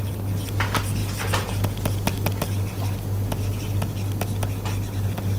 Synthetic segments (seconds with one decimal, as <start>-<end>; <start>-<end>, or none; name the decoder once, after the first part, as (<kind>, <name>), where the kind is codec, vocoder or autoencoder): none